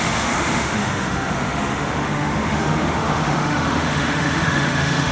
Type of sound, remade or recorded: remade